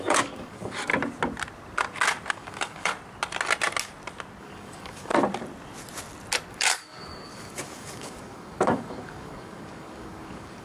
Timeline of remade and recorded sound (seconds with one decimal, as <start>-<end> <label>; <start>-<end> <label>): 0.0-0.9 remade; 0.9-2.3 recorded; 2.3-2.9 remade; 2.9-4.4 recorded; 4.4-5.1 remade; 5.1-6.5 recorded; 6.5-10.6 remade